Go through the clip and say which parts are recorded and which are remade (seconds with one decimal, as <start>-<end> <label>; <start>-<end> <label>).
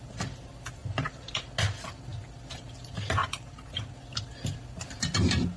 0.0-0.8 recorded; 0.8-1.5 remade; 1.5-3.2 recorded; 3.2-3.9 remade; 3.9-5.6 recorded